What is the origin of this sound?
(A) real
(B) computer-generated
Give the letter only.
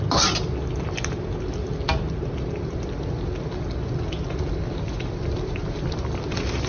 A